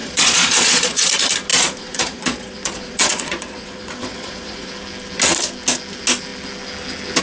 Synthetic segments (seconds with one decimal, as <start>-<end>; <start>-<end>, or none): 0.0-1.1; 1.5-4.7

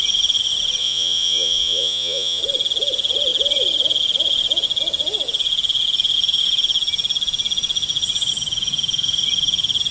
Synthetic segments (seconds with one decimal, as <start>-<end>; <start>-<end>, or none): 0.8-2.4

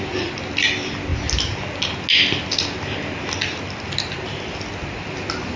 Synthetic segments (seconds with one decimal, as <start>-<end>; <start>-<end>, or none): none

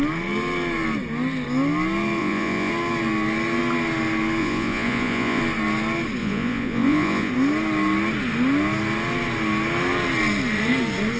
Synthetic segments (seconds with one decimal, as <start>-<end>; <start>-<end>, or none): 2.2-2.7; 4.4-5.4; 6.2-7.3

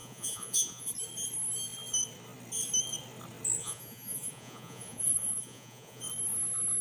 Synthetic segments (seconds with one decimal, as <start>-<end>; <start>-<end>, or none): 0.0-0.9; 3.6-6.0

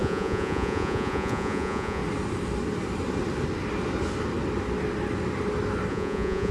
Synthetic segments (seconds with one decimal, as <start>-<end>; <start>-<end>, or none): 0.0-2.0; 5.9-6.5